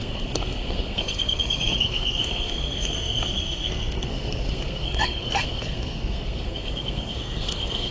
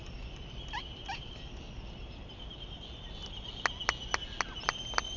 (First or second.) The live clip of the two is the second